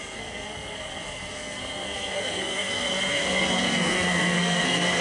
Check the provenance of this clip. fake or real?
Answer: fake